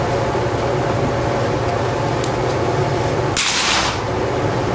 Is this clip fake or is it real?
real